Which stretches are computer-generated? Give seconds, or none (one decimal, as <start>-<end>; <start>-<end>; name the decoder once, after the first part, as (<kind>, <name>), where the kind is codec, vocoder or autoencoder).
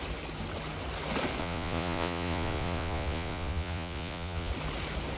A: 1.4-4.5 (vocoder, Vocos)